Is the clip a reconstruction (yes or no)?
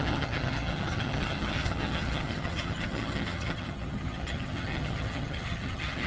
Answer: yes